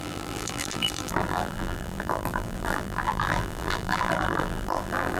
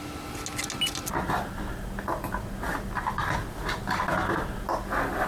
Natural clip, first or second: second